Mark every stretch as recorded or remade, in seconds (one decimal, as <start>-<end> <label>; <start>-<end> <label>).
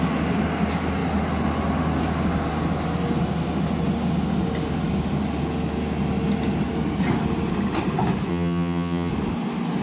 0.0-8.3 recorded; 8.3-9.1 remade; 9.1-9.8 recorded